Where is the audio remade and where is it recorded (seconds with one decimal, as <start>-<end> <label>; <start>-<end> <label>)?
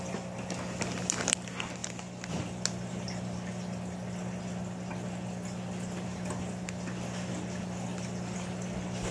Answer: 0.0-9.1 recorded